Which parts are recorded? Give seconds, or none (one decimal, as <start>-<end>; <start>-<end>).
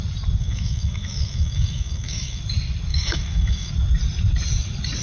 0.0-0.4; 2.4-2.9; 3.7-5.0